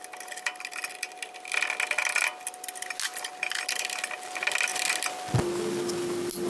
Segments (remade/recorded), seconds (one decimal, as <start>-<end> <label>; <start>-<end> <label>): 0.0-6.5 recorded